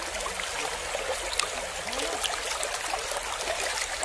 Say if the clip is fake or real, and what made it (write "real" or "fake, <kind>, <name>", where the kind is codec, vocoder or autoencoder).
real